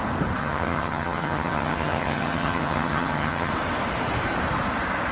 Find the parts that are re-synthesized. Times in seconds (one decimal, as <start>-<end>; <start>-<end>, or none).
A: 0.4-3.5